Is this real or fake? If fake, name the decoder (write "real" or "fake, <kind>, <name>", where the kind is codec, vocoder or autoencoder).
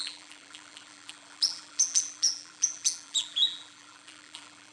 fake, vocoder, BigVGAN v2